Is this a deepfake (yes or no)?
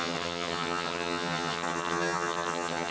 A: yes